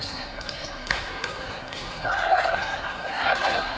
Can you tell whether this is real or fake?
fake